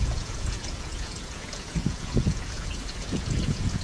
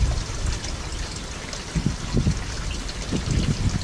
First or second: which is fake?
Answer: first